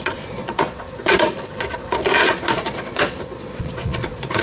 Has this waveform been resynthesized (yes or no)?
yes